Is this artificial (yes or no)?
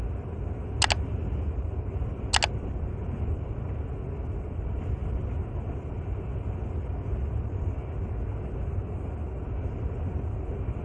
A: no